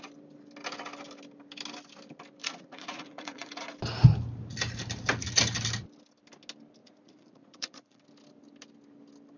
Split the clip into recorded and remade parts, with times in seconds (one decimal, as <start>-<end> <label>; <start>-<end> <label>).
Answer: 0.0-2.4 recorded; 2.4-3.5 remade; 3.5-6.8 recorded; 6.8-8.0 remade; 8.0-9.4 recorded